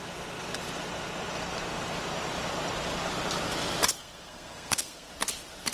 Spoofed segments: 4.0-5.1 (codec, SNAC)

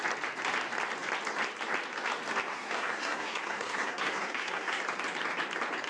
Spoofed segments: 2.5-4.8 (codec, SNAC)